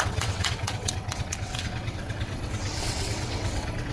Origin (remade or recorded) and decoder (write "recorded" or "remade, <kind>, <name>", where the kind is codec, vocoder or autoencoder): remade, vocoder, WaveNeXt